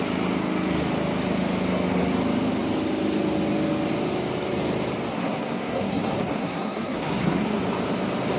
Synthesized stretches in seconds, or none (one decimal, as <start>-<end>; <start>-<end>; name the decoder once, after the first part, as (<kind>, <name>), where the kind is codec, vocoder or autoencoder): 5.1-7.6 (codec, SNAC)